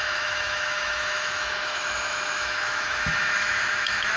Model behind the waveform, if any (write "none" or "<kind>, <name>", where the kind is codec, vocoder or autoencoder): autoencoder, DAC-VAE